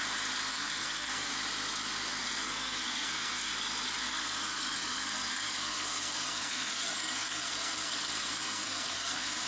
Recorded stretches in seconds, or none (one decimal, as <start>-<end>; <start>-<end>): 0.0-0.5; 1.3-2.2; 3.5-4.0